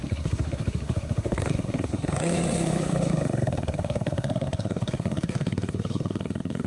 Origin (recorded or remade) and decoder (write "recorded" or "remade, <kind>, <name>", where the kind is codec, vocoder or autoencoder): remade, codec, SNAC